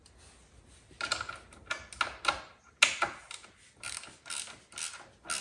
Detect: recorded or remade recorded